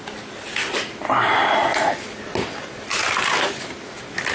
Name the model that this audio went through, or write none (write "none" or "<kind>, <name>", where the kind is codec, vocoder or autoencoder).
none